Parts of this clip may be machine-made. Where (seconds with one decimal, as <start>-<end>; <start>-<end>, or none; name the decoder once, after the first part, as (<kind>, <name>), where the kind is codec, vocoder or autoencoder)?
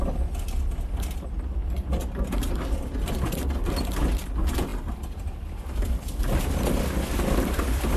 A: none